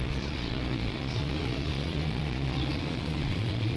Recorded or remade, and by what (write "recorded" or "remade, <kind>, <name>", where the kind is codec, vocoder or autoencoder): remade, vocoder, Vocos